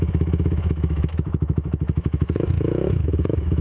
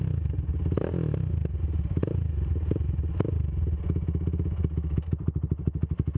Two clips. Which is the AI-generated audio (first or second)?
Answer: first